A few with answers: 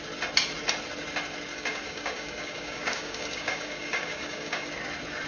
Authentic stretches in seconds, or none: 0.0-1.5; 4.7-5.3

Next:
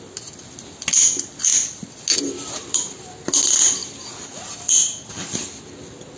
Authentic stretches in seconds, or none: 0.0-6.2

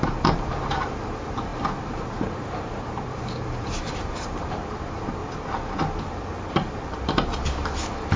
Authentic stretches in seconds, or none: 5.2-6.0

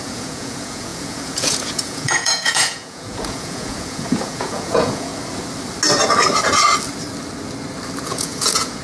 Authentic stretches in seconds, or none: 5.1-8.0

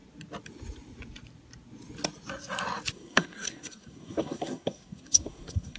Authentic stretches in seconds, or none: 0.0-2.9